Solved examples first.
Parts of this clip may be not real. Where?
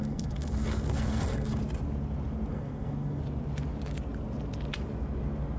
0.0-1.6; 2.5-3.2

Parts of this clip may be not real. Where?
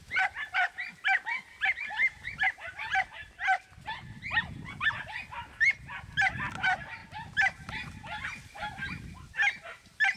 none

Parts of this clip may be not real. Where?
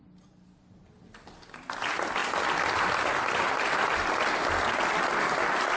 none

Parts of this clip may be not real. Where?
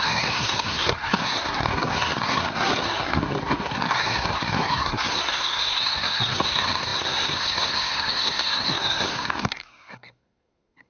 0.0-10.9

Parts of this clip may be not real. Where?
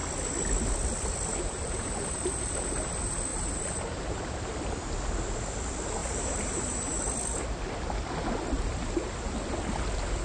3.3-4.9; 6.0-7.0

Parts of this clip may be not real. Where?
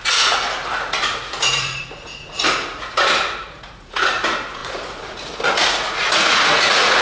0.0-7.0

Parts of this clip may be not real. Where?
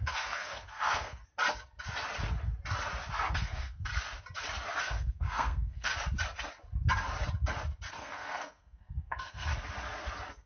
0.0-1.2; 3.3-3.9; 4.8-5.9; 7.9-9.5